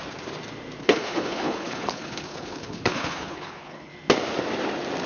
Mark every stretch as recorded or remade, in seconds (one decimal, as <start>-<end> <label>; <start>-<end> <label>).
0.0-0.8 recorded; 0.8-3.9 remade; 3.9-5.1 recorded